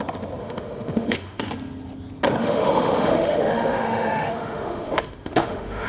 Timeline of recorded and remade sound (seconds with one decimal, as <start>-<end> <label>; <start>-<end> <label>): 0.0-0.4 recorded; 0.4-1.5 remade; 1.5-2.4 recorded; 2.4-5.9 remade